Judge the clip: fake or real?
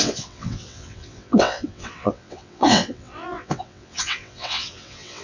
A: fake